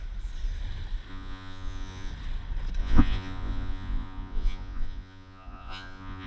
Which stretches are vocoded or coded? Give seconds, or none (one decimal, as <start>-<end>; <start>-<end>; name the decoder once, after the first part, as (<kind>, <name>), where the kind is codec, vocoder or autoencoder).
1.1-2.1 (vocoder, Vocos); 2.8-6.3